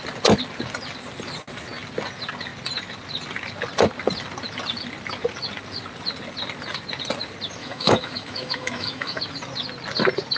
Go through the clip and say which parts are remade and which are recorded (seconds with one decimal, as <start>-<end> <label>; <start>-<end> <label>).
0.0-7.6 recorded; 7.6-9.2 remade; 9.2-10.4 recorded

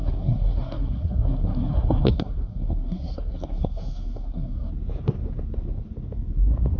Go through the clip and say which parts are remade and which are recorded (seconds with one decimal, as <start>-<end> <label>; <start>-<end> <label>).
0.0-4.7 remade; 4.7-6.8 recorded

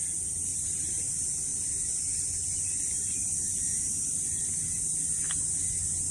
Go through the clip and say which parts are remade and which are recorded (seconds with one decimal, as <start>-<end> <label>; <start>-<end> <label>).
0.0-0.5 recorded; 0.5-1.1 remade; 1.1-3.5 recorded; 3.5-4.2 remade; 4.2-6.1 recorded

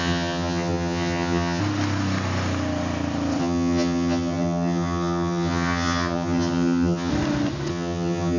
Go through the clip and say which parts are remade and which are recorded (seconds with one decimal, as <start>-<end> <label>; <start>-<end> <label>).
0.0-1.6 remade; 1.6-3.4 recorded; 3.4-7.1 remade; 7.1-7.7 recorded; 7.7-8.4 remade

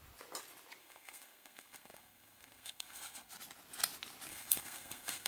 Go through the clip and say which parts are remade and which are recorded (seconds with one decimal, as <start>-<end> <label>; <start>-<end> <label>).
0.0-0.8 recorded; 0.8-3.3 remade; 3.3-4.3 recorded; 4.3-5.3 remade